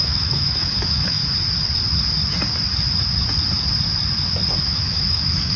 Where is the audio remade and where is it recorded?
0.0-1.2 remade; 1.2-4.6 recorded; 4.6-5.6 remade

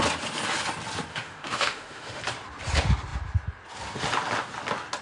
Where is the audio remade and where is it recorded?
0.0-1.1 recorded; 1.1-2.2 remade; 2.2-5.0 recorded

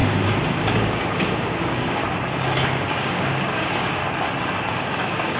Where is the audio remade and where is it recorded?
0.0-0.6 recorded; 0.6-2.0 remade; 2.0-2.9 recorded; 2.9-4.0 remade; 4.0-4.7 recorded; 4.7-5.4 remade